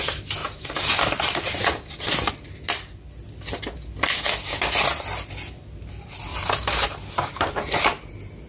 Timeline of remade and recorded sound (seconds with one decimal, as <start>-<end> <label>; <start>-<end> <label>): 0.0-0.4 recorded; 0.4-2.3 remade; 2.3-6.3 recorded; 6.3-7.8 remade; 7.8-8.5 recorded